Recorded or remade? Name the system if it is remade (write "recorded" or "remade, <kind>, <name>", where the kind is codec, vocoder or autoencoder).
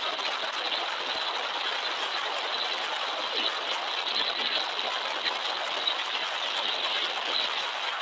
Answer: recorded